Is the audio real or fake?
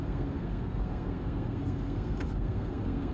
fake